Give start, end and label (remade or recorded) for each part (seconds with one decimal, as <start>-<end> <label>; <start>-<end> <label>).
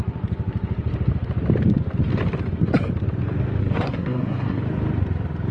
0.0-3.6 recorded; 3.6-4.6 remade; 4.6-5.5 recorded